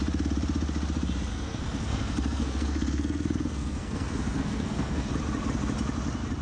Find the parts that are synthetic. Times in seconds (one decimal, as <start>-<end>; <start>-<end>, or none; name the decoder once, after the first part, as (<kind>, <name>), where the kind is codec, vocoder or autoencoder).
1.3-5.1 (codec, SNAC)